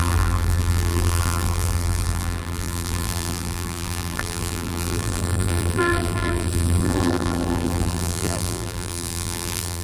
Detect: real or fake fake